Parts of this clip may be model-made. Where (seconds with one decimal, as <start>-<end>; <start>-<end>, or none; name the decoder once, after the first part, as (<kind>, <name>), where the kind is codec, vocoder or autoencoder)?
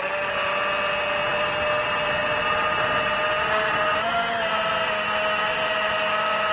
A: none